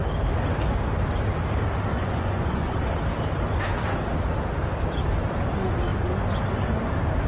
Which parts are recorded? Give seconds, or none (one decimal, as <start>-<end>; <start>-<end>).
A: 0.0-1.9; 2.8-7.3

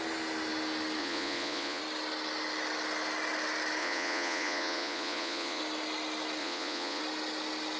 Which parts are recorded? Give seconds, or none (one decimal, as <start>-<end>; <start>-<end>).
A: 0.0-1.0; 1.8-3.8; 5.6-6.4; 7.0-7.8

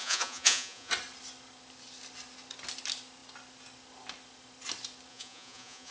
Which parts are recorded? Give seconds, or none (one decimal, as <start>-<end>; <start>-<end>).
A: 0.9-5.1